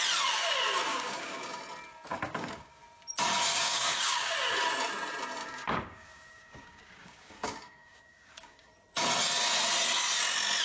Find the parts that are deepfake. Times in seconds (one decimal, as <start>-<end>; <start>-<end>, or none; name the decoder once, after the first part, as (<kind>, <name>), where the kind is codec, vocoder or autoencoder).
0.9-1.6 (codec, DAC); 2.1-2.8; 3.5-4.3; 5.4-8.7